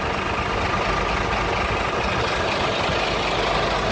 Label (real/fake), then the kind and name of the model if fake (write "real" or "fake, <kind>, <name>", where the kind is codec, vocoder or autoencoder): real